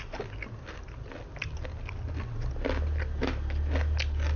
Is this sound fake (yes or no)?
no